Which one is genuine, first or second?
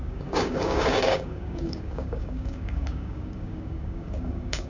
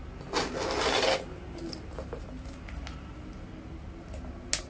second